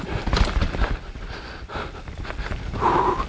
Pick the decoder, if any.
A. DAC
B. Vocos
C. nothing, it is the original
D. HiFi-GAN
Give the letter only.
C